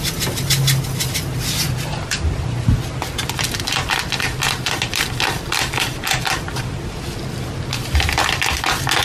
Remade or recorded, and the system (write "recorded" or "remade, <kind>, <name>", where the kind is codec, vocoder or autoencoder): recorded